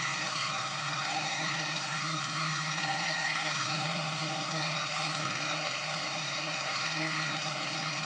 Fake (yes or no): yes